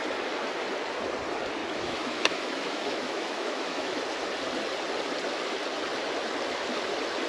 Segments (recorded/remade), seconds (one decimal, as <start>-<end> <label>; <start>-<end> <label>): 0.0-1.6 recorded; 1.6-4.0 remade; 4.0-7.3 recorded